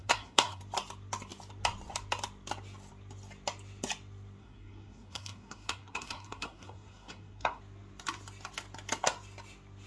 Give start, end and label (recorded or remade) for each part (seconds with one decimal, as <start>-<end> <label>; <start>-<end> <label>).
0.0-0.6 remade; 0.6-4.4 recorded; 4.4-7.6 remade; 7.6-9.9 recorded